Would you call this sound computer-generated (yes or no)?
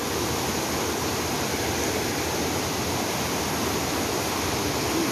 no